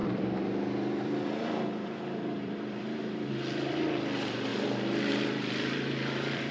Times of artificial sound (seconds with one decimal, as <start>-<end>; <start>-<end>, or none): 0.0-4.5; 5.1-6.5